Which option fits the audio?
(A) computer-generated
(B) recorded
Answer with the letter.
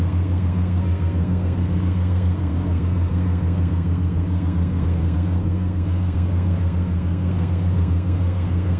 A